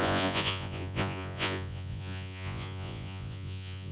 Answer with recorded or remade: remade